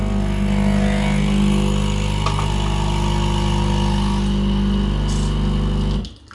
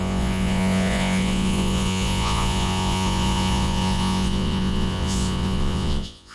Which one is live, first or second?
first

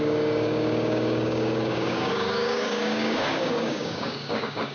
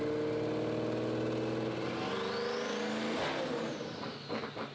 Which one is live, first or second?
second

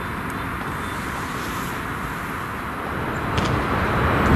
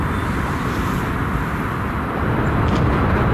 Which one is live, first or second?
first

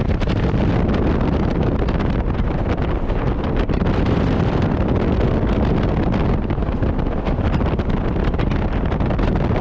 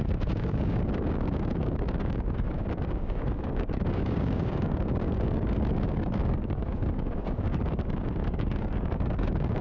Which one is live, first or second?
first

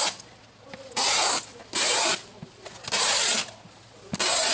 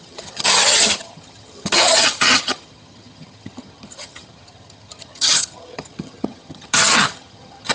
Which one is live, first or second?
first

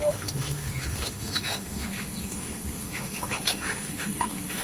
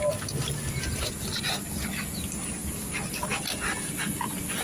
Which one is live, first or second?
second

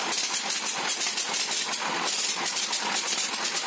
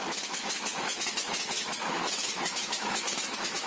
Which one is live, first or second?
first